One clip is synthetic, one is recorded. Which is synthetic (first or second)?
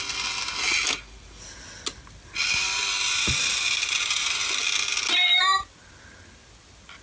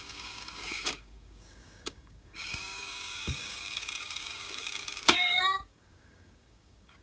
second